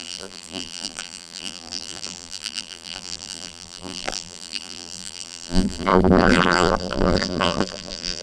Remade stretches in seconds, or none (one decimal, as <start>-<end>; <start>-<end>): 0.0-8.2

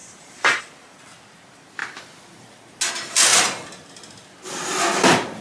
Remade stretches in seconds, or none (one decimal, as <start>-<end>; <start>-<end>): 0.0-0.6; 3.3-3.9

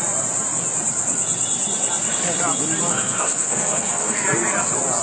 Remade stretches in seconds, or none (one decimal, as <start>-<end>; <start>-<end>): 2.9-4.2

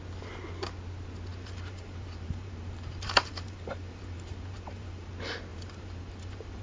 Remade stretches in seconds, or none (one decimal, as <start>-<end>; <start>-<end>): 1.3-5.1; 5.5-6.6

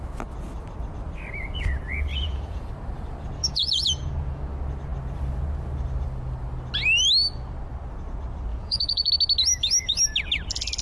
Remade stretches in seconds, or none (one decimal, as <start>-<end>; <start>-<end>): 2.1-2.7; 3.4-4.4; 8.5-9.1